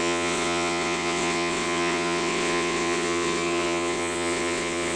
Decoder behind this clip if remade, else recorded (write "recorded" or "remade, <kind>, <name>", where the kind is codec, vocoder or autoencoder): remade, vocoder, WaveNeXt